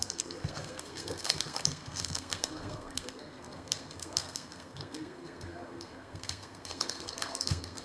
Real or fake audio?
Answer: fake